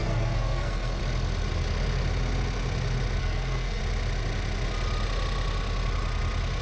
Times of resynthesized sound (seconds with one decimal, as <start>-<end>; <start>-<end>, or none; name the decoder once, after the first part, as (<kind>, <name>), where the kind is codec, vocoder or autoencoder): 0.0-1.0 (codec, SNAC); 3.2-3.8